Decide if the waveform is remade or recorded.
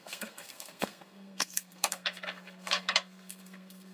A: remade